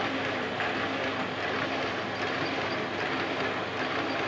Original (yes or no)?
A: yes